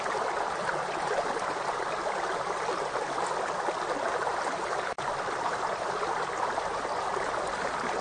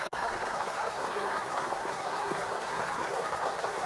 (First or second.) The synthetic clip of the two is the second